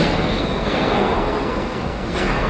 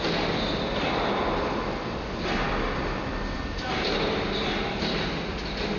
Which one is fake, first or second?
first